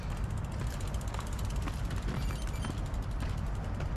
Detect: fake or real real